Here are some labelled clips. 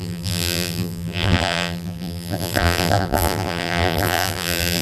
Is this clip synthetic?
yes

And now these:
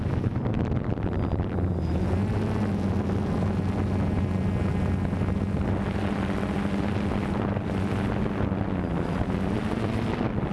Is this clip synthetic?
no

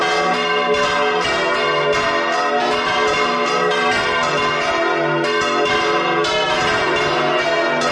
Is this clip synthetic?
no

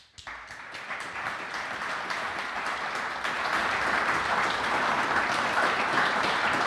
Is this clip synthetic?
no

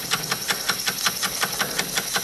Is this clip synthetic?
no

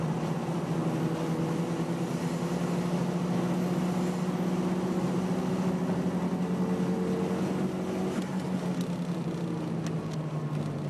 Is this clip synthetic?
no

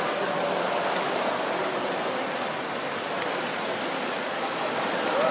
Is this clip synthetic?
no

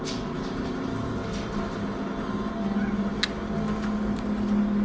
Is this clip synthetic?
no